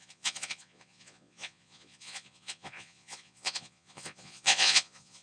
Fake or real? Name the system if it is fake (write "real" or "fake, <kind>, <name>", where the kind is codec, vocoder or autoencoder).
fake, vocoder, Vocos